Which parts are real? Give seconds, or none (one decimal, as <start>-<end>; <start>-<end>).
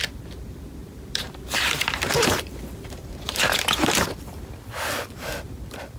0.0-0.8; 4.0-6.0